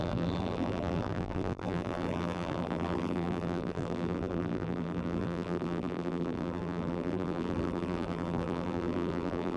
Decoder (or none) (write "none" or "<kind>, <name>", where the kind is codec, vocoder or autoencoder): vocoder, BigVGAN v2